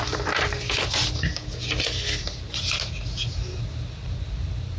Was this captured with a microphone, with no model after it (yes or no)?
yes